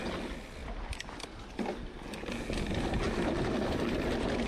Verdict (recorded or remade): recorded